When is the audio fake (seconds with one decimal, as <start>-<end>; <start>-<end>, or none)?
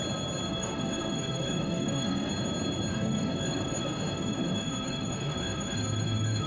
0.5-2.3; 2.9-6.5